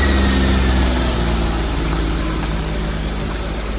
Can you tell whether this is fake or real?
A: real